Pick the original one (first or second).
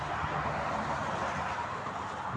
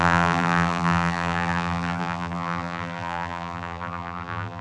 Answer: first